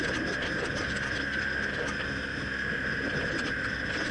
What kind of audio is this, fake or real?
real